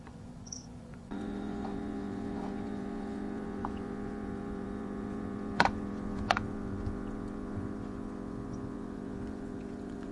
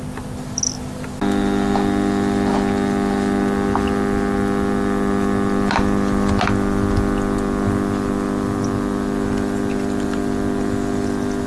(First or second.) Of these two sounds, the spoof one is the first